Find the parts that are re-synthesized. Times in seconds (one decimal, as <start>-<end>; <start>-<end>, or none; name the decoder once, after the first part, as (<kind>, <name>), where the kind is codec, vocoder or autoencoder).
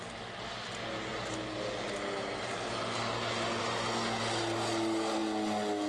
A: none